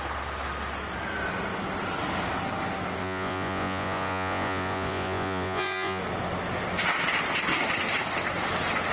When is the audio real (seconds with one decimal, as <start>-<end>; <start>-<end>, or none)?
0.0-3.0; 6.0-8.9